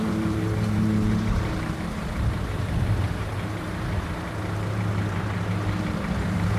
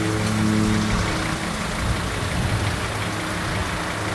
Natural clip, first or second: second